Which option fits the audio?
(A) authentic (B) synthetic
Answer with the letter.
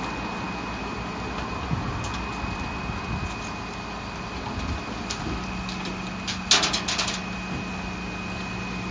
A